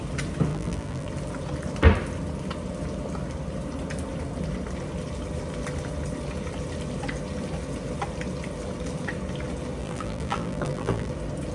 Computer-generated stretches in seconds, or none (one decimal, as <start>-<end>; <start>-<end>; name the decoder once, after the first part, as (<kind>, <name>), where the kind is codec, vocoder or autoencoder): 0.5-1.1 (vocoder, BigVGAN v2); 9.8-11.1